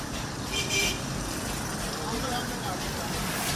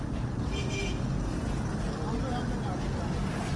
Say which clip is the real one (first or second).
second